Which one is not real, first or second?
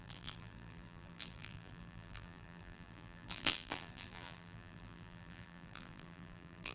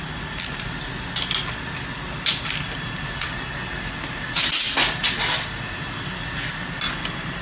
first